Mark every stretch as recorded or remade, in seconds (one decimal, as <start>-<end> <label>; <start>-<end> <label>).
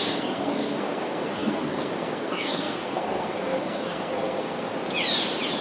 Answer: 0.0-4.7 remade; 4.7-5.6 recorded